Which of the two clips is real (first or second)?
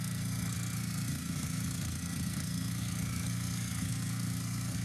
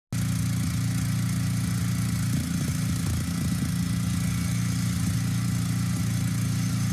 second